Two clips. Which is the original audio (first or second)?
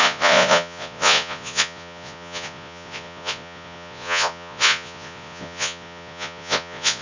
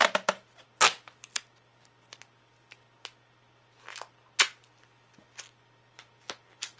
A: second